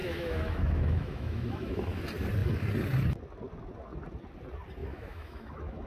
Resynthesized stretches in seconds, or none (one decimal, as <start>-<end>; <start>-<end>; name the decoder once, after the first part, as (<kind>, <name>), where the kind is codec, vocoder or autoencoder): 0.0-2.0 (autoencoder, DAC-VAE); 4.8-5.9